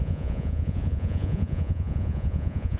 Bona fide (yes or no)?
no